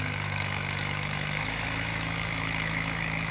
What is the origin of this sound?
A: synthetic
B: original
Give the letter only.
A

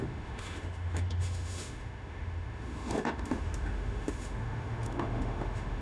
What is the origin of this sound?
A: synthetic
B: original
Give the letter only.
A